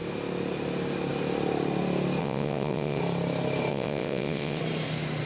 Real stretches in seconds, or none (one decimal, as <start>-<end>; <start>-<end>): 0.0-2.2; 3.0-3.7; 4.6-5.3